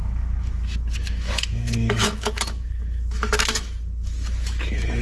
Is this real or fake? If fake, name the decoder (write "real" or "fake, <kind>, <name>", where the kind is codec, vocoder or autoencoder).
fake, autoencoder, DAC-VAE